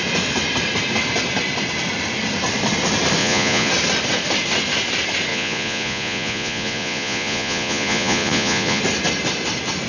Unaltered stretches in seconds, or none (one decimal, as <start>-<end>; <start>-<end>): 0.0-3.2; 3.7-5.3; 8.8-9.9